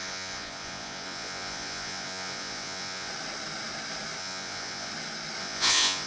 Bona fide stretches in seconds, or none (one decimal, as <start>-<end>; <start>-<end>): 3.1-4.2; 4.9-5.4